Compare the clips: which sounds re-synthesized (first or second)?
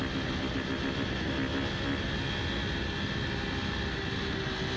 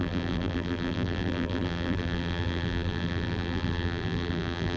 second